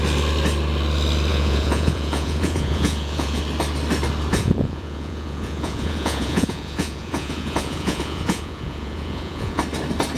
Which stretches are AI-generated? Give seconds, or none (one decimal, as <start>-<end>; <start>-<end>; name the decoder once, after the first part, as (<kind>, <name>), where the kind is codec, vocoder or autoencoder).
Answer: 1.3-3.4 (vocoder, Vocos); 4.3-9.6